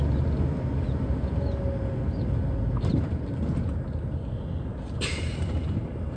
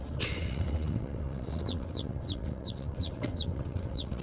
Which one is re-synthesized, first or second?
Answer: second